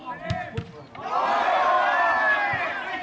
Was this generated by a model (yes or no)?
no